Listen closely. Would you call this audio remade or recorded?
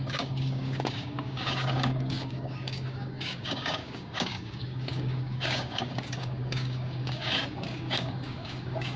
remade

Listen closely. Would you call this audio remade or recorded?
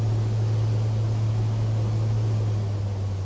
recorded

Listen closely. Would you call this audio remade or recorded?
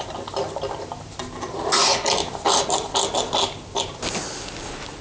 recorded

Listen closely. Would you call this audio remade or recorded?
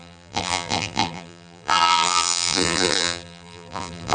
remade